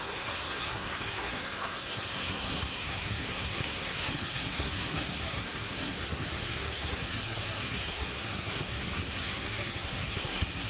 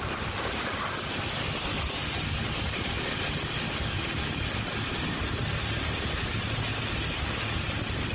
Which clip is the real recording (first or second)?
second